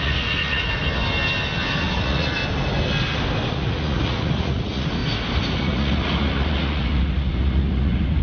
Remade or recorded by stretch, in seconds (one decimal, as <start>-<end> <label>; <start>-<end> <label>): 0.0-0.8 remade; 0.8-1.7 recorded; 1.7-2.4 remade; 2.4-3.5 recorded; 3.5-5.0 remade; 5.0-5.6 recorded; 5.6-8.2 remade